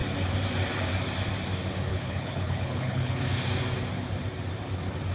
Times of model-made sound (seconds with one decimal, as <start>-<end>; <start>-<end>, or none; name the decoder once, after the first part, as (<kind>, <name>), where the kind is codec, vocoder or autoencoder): 1.9-3.2 (codec, HILCodec)